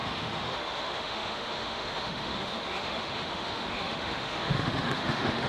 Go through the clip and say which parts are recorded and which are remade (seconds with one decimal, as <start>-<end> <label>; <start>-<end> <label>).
0.0-5.5 remade

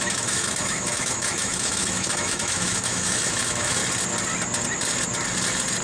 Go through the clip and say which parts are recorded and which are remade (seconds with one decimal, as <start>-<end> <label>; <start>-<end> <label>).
0.0-3.8 remade; 3.8-5.8 recorded

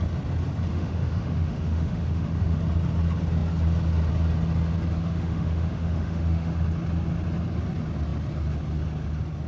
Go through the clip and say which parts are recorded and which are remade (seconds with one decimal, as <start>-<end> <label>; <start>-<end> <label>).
0.0-0.7 recorded; 0.7-2.6 remade; 2.6-5.0 recorded; 5.0-6.5 remade; 6.5-9.5 recorded

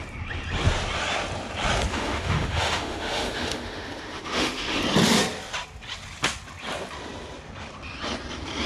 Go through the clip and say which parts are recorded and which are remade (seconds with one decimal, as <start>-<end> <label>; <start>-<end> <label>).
0.0-1.9 recorded; 1.9-4.8 remade; 4.8-8.7 recorded